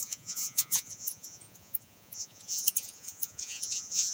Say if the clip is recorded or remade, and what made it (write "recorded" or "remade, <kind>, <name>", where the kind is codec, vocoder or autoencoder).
remade, vocoder, Vocos